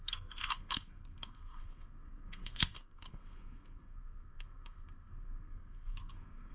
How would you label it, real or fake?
fake